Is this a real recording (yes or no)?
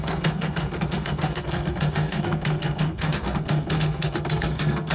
no